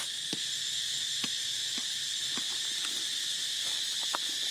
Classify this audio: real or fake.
real